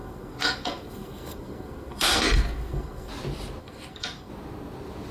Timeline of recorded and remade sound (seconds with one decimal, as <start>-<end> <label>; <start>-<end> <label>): 0.0-3.1 remade; 3.1-3.6 recorded; 3.6-4.3 remade; 4.3-5.1 recorded